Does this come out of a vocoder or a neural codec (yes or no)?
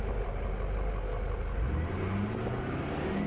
no